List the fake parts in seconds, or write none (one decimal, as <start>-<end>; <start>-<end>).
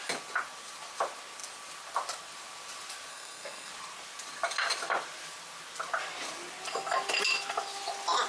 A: 3.1-3.7